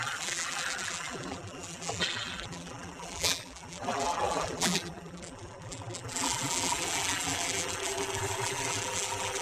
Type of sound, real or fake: fake